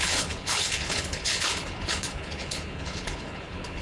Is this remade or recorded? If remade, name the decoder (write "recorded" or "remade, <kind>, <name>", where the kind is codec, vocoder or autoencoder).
remade, codec, HILCodec